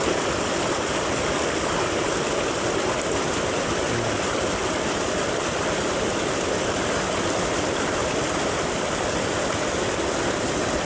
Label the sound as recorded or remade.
recorded